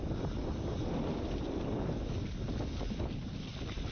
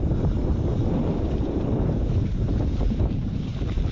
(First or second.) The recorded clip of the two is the first